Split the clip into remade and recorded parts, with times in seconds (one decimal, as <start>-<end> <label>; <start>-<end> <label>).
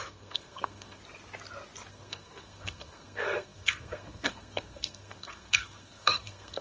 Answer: 0.0-1.0 remade; 1.0-1.9 recorded; 1.9-6.6 remade